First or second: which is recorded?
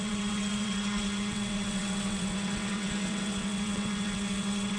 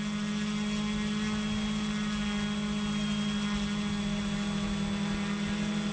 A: second